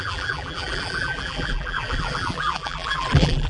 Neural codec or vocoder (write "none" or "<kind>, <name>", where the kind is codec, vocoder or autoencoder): vocoder, BigVGAN v2